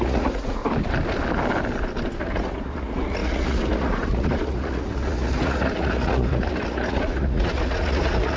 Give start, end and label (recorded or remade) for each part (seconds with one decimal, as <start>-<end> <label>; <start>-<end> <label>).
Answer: 0.0-0.6 remade; 0.6-2.2 recorded; 2.2-8.4 remade